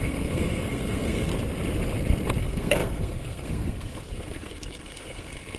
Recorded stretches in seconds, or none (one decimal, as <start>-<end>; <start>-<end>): 1.3-2.4